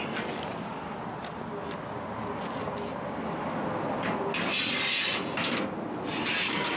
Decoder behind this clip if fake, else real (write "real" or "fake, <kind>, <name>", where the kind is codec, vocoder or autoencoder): real